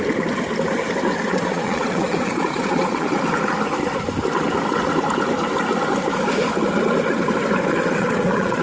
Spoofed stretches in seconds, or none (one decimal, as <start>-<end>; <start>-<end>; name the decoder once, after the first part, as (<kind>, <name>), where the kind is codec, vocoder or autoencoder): 1.3-3.2 (vocoder, Vocos); 7.7-8.6